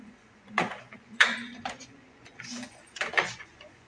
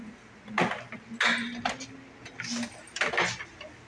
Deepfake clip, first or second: first